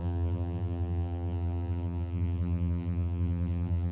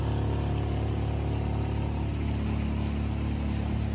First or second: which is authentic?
second